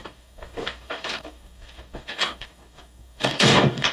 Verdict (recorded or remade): remade